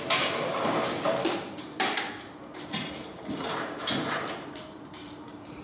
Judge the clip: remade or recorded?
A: remade